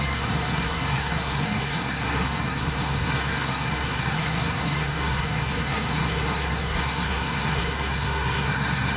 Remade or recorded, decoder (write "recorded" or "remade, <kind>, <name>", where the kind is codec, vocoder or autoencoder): remade, codec, SNAC